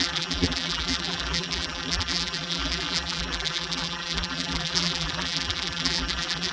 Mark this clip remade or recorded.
remade